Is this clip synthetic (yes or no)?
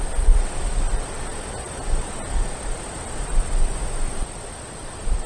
no